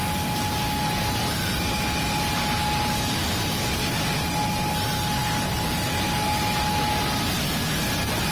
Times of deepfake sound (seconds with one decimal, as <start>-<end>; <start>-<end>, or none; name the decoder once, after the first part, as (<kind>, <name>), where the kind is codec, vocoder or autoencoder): 5.2-5.9 (vocoder, BigVGAN v2)